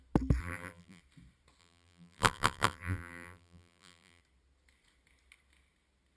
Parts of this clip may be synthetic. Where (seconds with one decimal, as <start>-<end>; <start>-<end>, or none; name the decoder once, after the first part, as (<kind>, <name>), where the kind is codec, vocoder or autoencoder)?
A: 0.4-1.0 (vocoder, BigVGAN v2); 1.6-4.2